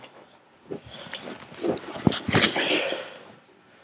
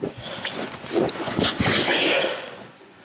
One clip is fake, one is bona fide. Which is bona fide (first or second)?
first